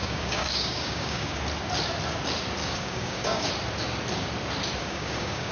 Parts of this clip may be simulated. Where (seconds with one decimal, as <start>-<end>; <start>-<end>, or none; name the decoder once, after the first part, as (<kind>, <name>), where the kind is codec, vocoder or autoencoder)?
0.0-1.4 (codec, DAC); 2.6-3.5; 4.8-5.5